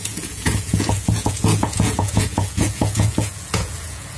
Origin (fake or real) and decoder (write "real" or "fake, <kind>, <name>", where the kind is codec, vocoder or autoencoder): fake, vocoder, Vocos